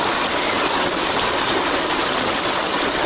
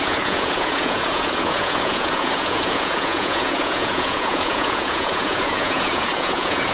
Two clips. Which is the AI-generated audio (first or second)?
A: second